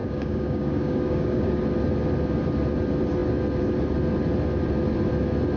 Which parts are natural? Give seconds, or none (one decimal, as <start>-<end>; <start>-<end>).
1.6-5.6